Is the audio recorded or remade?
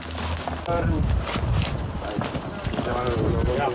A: recorded